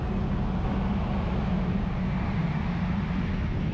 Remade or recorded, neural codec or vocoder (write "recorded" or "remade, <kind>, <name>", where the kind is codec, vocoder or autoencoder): recorded